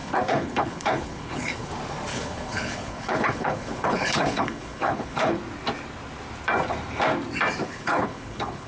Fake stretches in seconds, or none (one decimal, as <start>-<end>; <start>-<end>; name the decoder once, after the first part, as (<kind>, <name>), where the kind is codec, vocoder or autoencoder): 0.0-1.7 (codec, HILCodec); 2.1-5.4; 7.6-8.7